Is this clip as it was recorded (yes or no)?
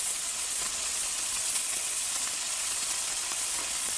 no